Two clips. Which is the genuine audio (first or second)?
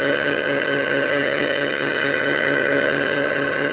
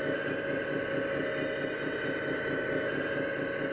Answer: second